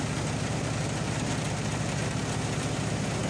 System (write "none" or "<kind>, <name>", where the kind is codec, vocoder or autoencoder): none